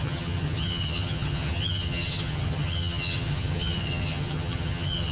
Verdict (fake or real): fake